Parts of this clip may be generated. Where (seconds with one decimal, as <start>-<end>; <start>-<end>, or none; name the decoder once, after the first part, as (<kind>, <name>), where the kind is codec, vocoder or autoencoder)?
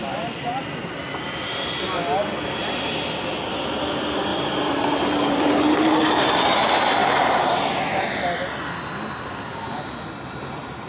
4.3-6.3 (vocoder, BigVGAN v2); 7.0-7.6